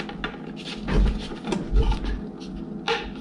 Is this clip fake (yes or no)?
no